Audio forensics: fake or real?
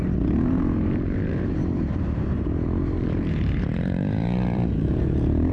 fake